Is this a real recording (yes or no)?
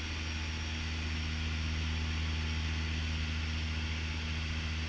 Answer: yes